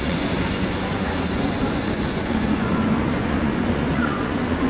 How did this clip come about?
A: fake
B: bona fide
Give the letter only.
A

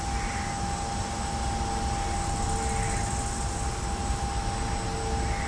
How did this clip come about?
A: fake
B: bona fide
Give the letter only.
B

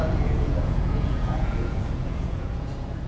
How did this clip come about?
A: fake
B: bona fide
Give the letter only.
A